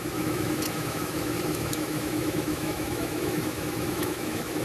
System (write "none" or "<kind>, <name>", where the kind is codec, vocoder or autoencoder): autoencoder, DAC-VAE